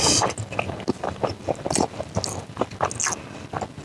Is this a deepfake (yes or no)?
no